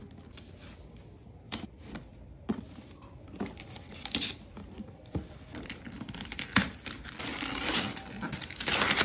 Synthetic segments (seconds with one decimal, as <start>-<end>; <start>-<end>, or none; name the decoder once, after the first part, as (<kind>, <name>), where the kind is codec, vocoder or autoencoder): 2.1-7.1 (vocoder, BigVGAN v2)